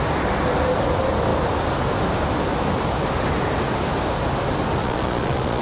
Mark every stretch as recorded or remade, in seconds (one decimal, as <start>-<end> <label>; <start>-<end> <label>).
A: 0.0-4.8 recorded; 4.8-5.6 remade